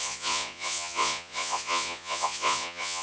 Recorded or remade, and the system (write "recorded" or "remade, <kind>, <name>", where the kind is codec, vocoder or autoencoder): remade, vocoder, Vocos